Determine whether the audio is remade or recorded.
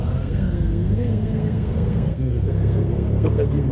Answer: remade